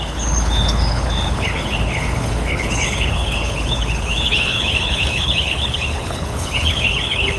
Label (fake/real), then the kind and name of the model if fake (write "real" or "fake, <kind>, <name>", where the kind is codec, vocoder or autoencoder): fake, codec, HILCodec